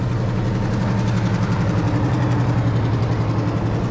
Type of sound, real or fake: real